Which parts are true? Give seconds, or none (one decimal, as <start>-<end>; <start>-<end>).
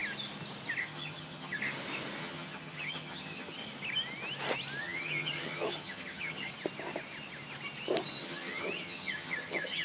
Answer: 0.0-0.8; 1.6-2.2; 3.6-4.8; 6.5-8.2